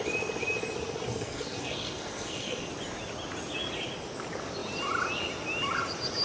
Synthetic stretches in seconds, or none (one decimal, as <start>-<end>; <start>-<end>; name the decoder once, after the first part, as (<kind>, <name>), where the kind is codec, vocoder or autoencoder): 1.1-2.7 (codec, SNAC)